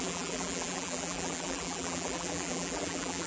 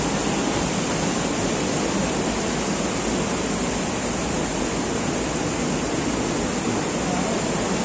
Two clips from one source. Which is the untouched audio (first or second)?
second